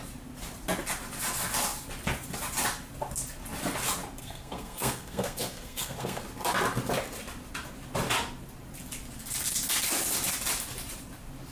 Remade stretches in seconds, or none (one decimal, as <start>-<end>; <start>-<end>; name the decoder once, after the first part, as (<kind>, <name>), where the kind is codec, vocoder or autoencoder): 4.2-6.2 (codec, SNAC)